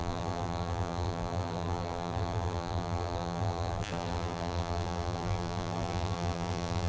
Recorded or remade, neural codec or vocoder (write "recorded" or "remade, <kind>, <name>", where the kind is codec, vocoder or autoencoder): remade, vocoder, BigVGAN v2